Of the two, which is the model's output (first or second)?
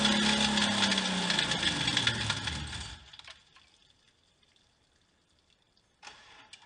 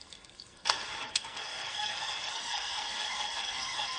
second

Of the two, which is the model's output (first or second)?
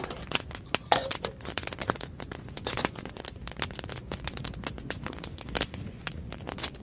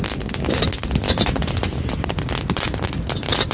first